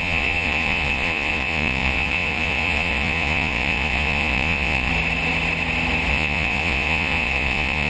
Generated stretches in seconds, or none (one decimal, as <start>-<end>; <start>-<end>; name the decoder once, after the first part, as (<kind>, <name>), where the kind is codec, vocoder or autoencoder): 0.0-4.9 (vocoder, Vocos); 6.1-7.9

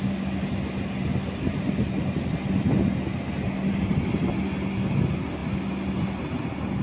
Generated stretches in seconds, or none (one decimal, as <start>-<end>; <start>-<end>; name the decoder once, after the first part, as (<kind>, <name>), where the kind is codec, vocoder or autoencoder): none

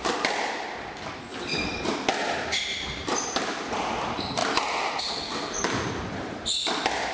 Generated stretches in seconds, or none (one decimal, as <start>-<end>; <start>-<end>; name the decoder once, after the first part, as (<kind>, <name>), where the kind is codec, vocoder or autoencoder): none

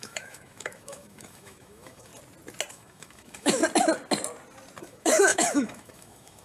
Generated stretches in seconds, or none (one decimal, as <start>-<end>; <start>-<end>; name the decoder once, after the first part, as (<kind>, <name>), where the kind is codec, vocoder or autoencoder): 0.0-2.1 (autoencoder, DAC-VAE); 2.7-3.6; 4.8-6.4

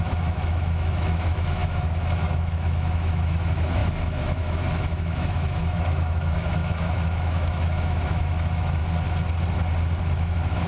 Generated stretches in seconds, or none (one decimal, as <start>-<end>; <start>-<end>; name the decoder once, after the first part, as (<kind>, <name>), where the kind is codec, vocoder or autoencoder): 0.0-8.8 (autoencoder, DAC-VAE); 10.0-10.7

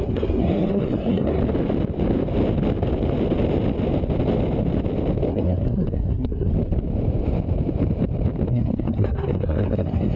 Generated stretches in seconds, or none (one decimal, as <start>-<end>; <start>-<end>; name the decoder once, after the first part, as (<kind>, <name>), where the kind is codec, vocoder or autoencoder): 0.0-1.4 (codec, SNAC); 5.3-6.5; 8.5-10.2

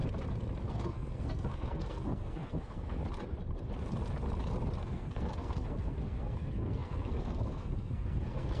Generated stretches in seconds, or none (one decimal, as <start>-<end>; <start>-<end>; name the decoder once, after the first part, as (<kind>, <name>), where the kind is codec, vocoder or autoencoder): 0.7-3.0 (codec, SNAC); 4.8-8.6

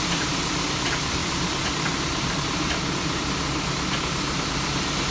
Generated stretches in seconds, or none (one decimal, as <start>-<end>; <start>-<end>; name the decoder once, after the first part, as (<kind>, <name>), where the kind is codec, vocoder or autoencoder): none